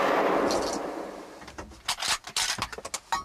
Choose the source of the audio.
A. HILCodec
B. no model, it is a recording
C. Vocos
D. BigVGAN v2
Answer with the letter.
B